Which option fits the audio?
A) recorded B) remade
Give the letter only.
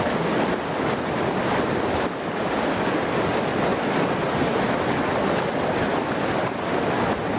A